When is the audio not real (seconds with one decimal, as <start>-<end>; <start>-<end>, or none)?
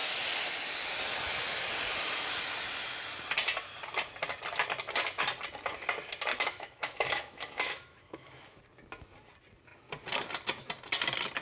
6.3-8.6